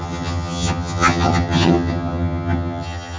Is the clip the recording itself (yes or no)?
no